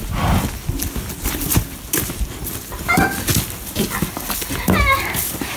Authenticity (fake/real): real